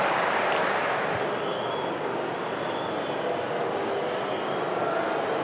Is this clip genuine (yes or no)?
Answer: yes